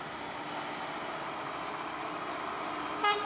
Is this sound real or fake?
real